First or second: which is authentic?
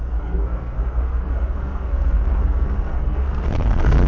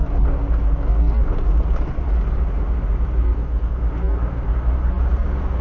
second